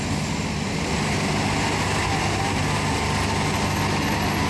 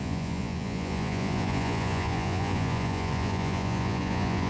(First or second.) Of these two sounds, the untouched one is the first